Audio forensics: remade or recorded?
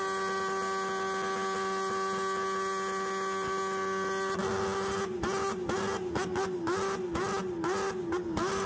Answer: recorded